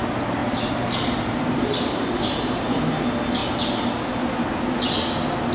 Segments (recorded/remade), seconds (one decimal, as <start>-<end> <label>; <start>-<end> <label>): 0.0-0.4 recorded; 0.4-2.8 remade; 2.8-5.5 recorded